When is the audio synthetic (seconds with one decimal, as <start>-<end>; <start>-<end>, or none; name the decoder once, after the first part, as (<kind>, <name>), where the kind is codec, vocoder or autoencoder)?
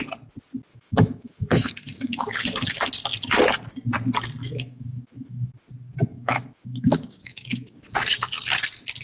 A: 0.7-2.4 (autoencoder, DAC-VAE); 4.4-5.5; 6.1-7.8